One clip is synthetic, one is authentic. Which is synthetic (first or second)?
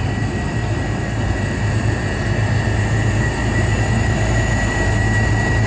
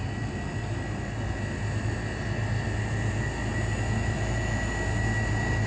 first